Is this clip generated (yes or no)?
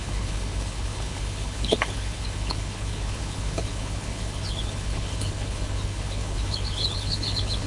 yes